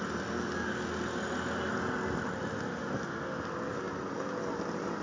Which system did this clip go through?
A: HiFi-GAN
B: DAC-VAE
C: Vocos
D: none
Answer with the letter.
D